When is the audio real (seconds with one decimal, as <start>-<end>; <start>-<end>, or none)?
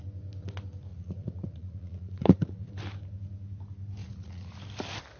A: 0.0-0.9; 2.7-4.0; 4.6-5.2